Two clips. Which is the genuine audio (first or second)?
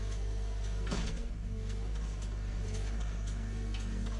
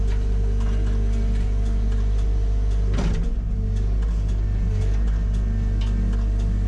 second